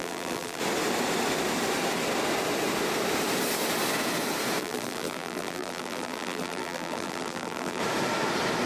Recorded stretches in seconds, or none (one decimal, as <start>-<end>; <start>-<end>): 0.6-4.6; 7.8-8.7